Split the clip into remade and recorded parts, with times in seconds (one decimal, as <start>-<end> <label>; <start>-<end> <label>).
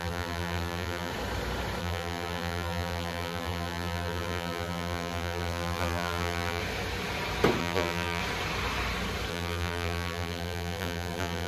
0.0-1.1 remade; 1.1-1.8 recorded; 1.8-6.6 remade; 6.6-7.6 recorded; 7.6-8.2 remade; 8.2-9.3 recorded; 9.3-11.5 remade